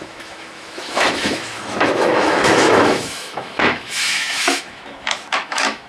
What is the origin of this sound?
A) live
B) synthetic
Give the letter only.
B